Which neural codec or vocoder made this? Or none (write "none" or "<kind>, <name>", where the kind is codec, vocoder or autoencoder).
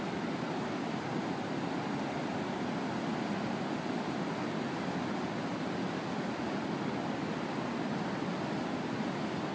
none